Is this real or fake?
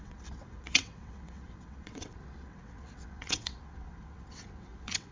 fake